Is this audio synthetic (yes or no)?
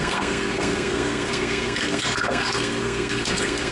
yes